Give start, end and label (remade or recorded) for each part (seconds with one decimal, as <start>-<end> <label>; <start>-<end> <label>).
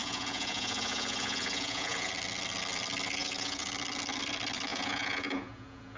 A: 0.0-2.1 remade; 2.1-3.2 recorded; 3.2-3.7 remade; 3.7-4.7 recorded; 4.7-6.0 remade